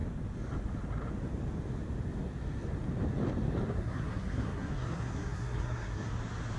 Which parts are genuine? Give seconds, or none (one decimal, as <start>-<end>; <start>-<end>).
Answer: 0.0-3.7; 6.1-6.6